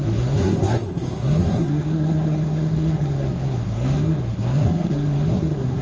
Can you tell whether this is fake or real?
fake